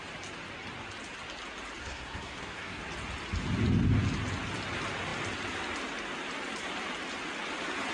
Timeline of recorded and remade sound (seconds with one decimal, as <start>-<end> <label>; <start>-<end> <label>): 0.0-1.8 recorded; 1.8-2.8 remade; 2.8-7.9 recorded